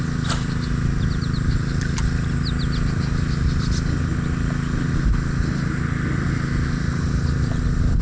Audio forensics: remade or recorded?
recorded